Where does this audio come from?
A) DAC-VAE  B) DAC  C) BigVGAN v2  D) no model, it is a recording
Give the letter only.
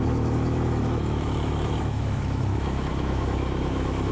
A